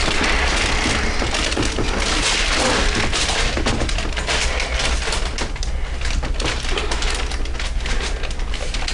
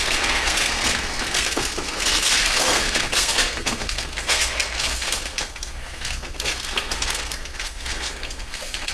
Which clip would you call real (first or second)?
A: first